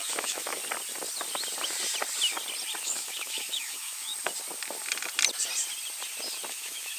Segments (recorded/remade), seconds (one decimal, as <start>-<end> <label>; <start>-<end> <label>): 0.0-0.6 remade; 0.6-2.8 recorded; 2.8-4.1 remade; 4.1-6.5 recorded; 6.5-7.0 remade